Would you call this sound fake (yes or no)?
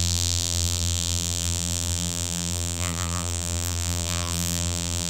yes